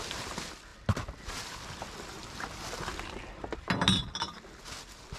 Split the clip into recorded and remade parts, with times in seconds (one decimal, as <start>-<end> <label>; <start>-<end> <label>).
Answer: 0.0-5.2 recorded

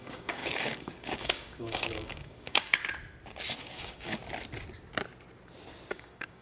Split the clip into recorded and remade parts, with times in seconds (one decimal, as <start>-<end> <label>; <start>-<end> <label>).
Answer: 0.0-2.8 remade; 2.8-3.6 recorded; 3.6-4.2 remade; 4.2-5.9 recorded; 5.9-6.4 remade

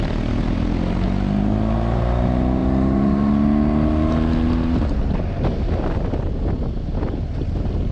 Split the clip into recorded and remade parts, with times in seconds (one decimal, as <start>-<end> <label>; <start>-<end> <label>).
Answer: 0.0-7.9 recorded

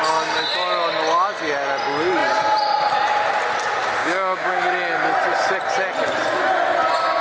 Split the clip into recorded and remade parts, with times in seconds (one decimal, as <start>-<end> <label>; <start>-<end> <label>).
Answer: 0.0-4.0 recorded; 4.0-4.6 remade; 4.6-7.2 recorded

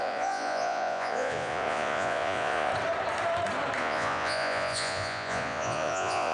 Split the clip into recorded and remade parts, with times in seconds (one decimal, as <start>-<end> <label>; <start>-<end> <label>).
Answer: 0.0-2.7 remade; 2.7-3.8 recorded; 3.8-6.3 remade

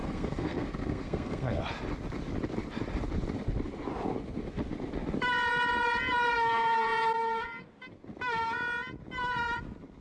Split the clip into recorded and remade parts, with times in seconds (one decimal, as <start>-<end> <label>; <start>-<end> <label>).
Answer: 0.0-1.6 remade; 1.6-10.0 recorded

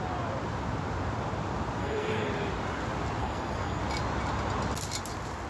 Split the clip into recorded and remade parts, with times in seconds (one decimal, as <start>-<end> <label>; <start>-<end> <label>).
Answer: 0.0-1.8 recorded; 1.8-2.3 remade; 2.3-3.2 recorded; 3.2-3.8 remade; 3.8-5.5 recorded

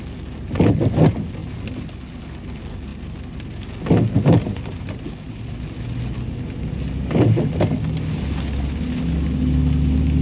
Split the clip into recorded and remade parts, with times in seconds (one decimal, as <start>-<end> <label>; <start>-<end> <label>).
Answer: 0.0-10.2 recorded